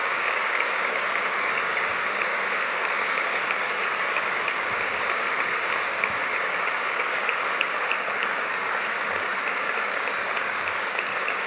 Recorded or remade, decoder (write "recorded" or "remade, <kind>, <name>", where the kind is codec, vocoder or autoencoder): remade, codec, DAC